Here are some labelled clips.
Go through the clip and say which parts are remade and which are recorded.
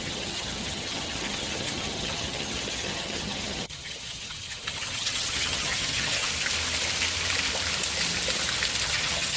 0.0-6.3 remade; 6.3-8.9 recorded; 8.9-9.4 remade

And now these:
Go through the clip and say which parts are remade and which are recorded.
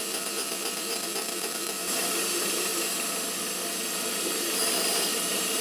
0.0-2.7 remade; 2.7-5.1 recorded; 5.1-5.6 remade